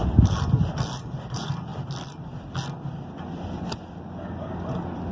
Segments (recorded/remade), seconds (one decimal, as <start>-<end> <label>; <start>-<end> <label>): 0.0-5.1 recorded